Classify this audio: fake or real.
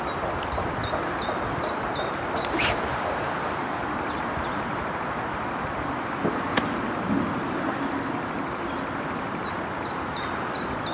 real